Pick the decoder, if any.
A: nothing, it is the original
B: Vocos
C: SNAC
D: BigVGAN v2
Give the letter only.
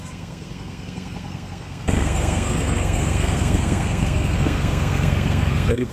C